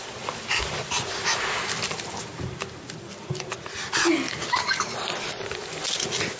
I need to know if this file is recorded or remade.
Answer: recorded